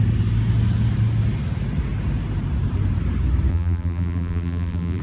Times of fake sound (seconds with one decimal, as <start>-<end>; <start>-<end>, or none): 3.5-5.0